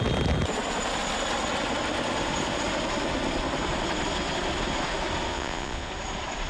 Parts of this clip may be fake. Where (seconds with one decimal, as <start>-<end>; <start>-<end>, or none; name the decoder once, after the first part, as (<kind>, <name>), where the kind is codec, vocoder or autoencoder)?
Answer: 5.3-5.9 (vocoder, Vocos)